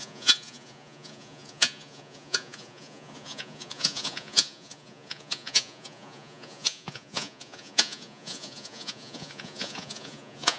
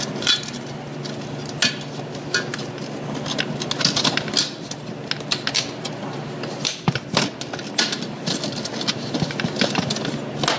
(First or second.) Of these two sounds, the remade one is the first